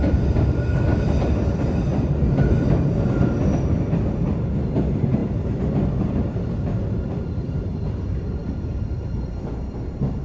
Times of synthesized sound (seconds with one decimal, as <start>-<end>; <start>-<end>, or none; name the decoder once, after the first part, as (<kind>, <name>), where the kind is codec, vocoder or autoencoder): none